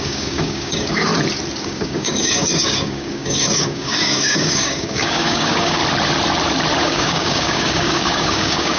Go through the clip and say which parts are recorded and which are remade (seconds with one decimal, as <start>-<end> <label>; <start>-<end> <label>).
0.0-1.1 remade; 1.1-1.6 recorded; 1.6-5.8 remade; 5.8-6.8 recorded; 6.8-8.8 remade